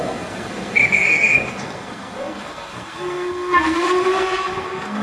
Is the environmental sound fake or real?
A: fake